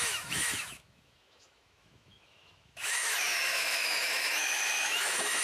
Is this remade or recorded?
remade